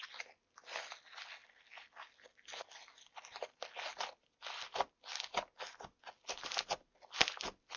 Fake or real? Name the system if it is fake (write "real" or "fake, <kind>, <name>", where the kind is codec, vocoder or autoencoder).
real